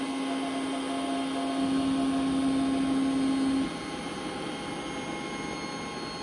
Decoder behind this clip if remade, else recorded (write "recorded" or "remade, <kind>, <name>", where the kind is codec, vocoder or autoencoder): recorded